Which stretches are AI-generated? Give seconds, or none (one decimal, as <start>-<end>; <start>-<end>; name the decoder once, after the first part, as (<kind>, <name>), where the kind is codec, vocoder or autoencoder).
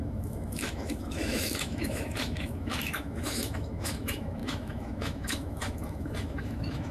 0.0-6.9 (autoencoder, DAC-VAE)